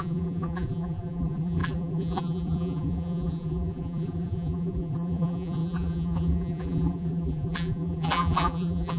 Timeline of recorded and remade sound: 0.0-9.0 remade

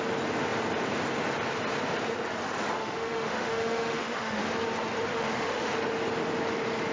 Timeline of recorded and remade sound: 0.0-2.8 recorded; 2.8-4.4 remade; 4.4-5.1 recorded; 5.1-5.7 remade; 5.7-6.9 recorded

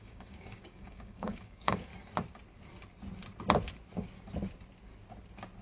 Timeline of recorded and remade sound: 0.0-1.9 remade; 1.9-5.6 recorded

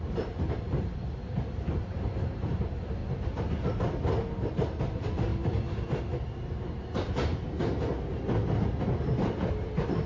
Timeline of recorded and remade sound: 0.0-3.0 remade; 3.0-4.8 recorded; 4.8-5.3 remade; 5.3-6.0 recorded; 6.0-7.3 remade; 7.3-9.5 recorded; 9.5-10.1 remade

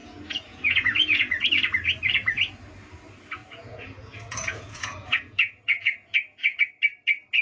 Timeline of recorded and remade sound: 0.0-1.5 remade; 1.5-3.4 recorded; 3.4-6.7 remade; 6.7-7.4 recorded

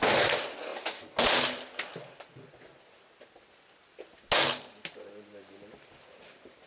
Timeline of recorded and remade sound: 0.0-6.7 recorded

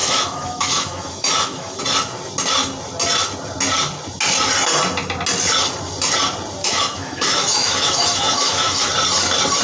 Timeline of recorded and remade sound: 0.0-1.8 remade; 1.8-6.6 recorded; 6.6-8.9 remade; 8.9-9.6 recorded